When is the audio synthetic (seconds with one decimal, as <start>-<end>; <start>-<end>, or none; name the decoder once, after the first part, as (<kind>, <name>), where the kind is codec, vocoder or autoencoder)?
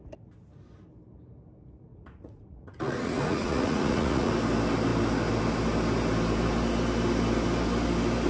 1.9-4.3 (vocoder, Vocos)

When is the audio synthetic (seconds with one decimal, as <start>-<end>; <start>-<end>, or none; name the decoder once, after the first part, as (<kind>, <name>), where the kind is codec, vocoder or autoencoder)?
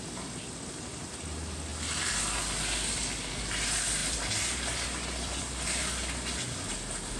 none